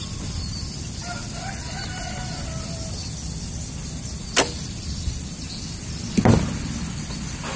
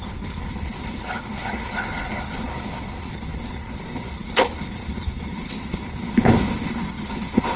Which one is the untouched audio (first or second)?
first